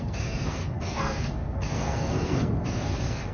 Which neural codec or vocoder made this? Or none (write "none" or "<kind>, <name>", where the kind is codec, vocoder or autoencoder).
codec, SNAC